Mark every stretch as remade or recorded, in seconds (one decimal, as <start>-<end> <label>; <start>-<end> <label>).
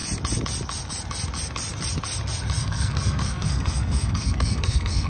0.0-2.6 recorded; 2.6-5.1 remade